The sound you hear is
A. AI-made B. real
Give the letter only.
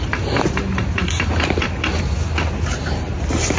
B